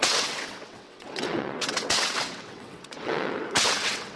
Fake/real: fake